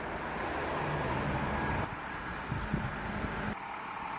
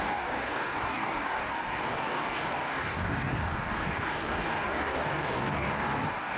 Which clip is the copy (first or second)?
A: second